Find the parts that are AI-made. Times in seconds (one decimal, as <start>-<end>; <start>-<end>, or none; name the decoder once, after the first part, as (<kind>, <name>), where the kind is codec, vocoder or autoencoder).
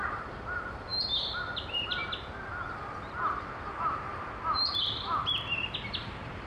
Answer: 0.0-2.0 (vocoder, BigVGAN v2); 5.9-6.5